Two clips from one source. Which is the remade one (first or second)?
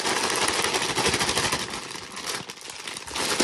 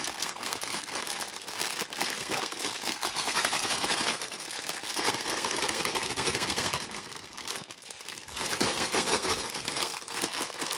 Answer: second